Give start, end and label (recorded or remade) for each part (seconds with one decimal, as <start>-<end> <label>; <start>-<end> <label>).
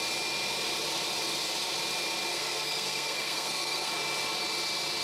0.0-2.3 recorded; 2.3-3.9 remade; 3.9-5.0 recorded